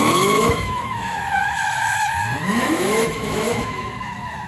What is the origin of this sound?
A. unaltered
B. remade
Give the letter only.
B